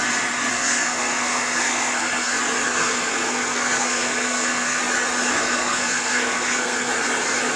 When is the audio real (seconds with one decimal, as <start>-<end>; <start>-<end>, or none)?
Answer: 0.0-0.5; 2.4-2.8; 4.8-5.3; 6.9-7.6